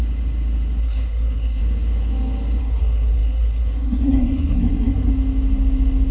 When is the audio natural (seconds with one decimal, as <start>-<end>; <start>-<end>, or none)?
0.0-0.8; 1.6-2.6; 5.1-6.1